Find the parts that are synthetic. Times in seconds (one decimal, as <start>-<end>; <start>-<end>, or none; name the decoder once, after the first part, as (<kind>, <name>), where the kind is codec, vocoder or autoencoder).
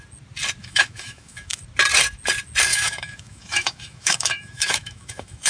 0.6-1.6 (autoencoder, DAC-VAE); 2.7-5.5